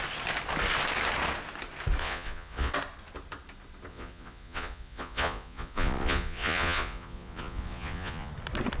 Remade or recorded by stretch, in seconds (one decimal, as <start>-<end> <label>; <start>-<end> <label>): 0.0-2.0 recorded; 2.0-2.7 remade; 2.7-3.9 recorded; 3.9-8.3 remade; 8.3-8.8 recorded